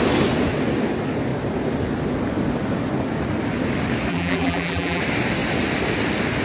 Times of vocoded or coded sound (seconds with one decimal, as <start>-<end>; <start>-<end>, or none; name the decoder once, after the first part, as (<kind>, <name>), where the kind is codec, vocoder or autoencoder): 4.1-5.0 (vocoder, BigVGAN v2)